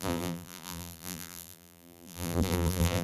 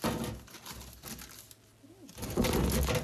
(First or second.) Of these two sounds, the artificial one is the first